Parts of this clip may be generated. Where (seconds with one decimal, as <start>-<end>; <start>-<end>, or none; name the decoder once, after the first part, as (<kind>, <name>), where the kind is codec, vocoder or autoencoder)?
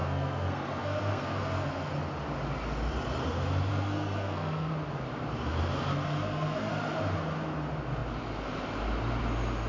0.0-1.9 (codec, SNAC); 3.7-4.7; 5.9-6.7